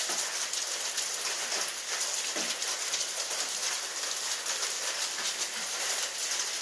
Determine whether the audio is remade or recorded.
recorded